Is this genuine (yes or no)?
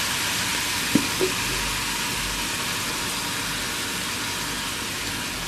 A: yes